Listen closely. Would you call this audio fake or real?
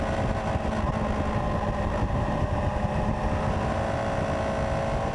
real